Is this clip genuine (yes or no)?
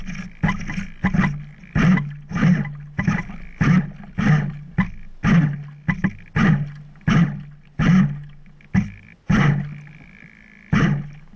yes